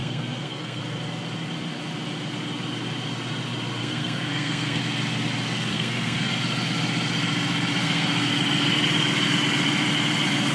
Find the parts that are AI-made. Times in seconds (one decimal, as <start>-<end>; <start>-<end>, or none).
0.0-0.8; 3.8-4.8; 5.7-6.3; 7.8-8.3